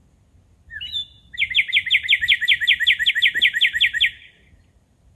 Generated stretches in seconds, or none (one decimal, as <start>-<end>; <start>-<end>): none